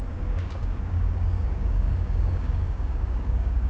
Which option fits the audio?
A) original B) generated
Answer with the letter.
B